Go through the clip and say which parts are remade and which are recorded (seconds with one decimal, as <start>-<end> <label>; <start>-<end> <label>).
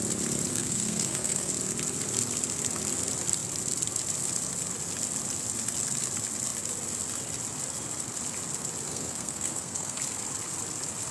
0.0-0.5 recorded; 0.5-1.5 remade; 1.5-8.9 recorded; 8.9-10.0 remade; 10.0-11.1 recorded